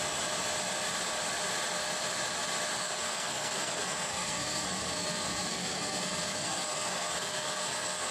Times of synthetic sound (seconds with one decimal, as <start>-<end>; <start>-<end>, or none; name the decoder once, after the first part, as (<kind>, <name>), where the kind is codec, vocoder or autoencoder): 2.8-8.1 (codec, SNAC)